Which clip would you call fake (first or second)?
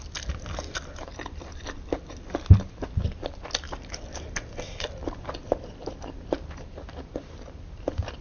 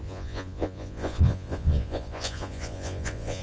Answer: second